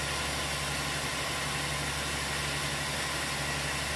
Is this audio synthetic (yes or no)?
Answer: no